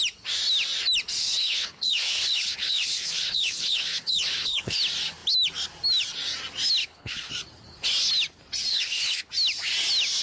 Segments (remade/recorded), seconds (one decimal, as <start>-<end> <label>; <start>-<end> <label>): 0.0-1.2 recorded; 1.2-4.8 remade; 4.8-6.8 recorded; 6.8-7.3 remade; 7.3-8.7 recorded; 8.7-9.3 remade; 9.3-10.2 recorded